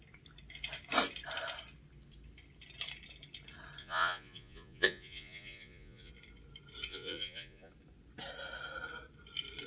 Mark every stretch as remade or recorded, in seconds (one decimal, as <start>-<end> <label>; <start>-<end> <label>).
0.0-3.8 recorded; 3.8-6.1 remade; 6.1-6.9 recorded; 6.9-7.7 remade; 7.7-9.7 recorded

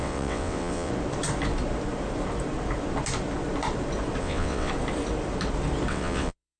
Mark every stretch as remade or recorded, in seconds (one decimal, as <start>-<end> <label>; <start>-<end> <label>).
0.0-0.9 remade; 0.9-4.2 recorded; 4.2-4.7 remade; 4.7-5.9 recorded; 5.9-6.6 remade

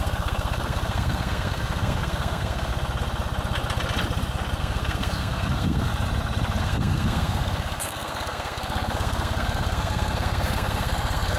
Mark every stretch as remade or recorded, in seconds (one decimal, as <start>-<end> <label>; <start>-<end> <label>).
0.0-2.7 remade; 2.7-4.6 recorded; 4.6-5.9 remade; 5.9-6.6 recorded; 6.6-11.4 remade